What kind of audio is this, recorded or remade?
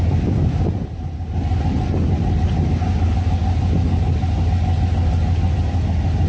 recorded